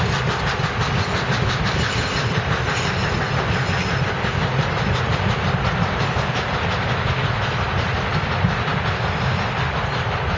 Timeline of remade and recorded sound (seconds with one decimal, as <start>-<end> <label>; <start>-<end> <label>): 0.0-10.4 recorded